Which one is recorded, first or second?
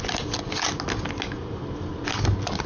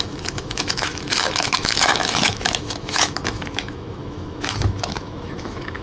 first